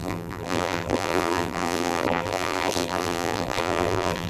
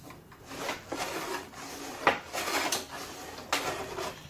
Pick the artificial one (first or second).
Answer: first